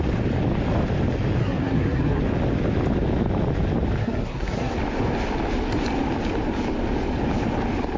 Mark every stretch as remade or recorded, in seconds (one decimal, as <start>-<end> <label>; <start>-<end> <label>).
0.0-1.4 recorded; 1.4-2.2 remade; 2.2-4.0 recorded; 4.0-4.7 remade; 4.7-8.0 recorded